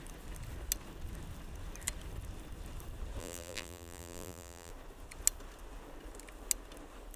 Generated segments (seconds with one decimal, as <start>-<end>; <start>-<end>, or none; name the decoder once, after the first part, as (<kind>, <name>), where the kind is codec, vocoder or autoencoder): 3.2-4.7 (vocoder, BigVGAN v2)